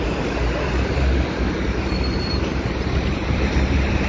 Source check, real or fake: fake